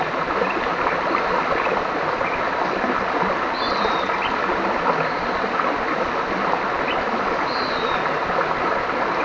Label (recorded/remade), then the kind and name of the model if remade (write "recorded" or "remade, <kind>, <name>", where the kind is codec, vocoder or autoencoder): recorded